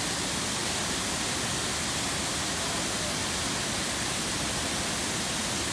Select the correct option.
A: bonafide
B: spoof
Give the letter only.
A